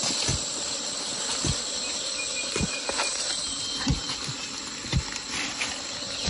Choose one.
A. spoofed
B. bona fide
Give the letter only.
B